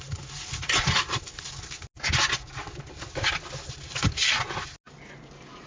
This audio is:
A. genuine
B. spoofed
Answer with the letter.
A